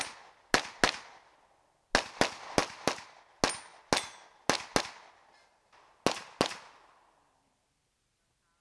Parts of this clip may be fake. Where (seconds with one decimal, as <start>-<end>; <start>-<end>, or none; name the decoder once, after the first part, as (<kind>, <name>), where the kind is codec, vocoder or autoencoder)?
none